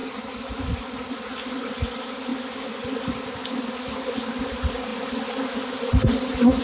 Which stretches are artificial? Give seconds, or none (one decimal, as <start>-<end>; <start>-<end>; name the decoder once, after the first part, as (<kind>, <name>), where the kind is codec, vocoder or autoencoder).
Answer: none